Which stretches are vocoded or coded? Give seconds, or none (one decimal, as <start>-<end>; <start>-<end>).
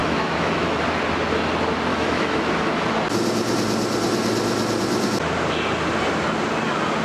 0.0-0.8; 1.9-2.5